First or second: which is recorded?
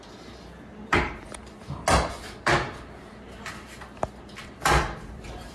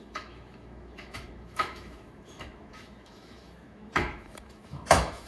first